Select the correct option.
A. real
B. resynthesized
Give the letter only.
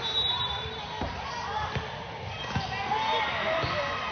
A